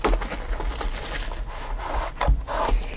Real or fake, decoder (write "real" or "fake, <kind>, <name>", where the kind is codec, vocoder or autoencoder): real